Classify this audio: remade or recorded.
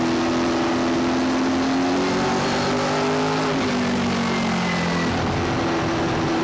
recorded